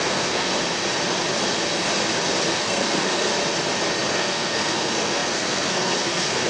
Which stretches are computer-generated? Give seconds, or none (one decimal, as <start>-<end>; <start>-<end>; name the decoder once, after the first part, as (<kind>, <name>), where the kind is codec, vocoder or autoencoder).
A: 0.0-0.5 (codec, SNAC); 2.6-3.3; 4.1-6.5